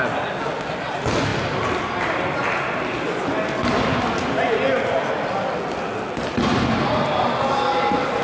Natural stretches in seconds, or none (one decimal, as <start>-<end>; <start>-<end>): 0.0-8.2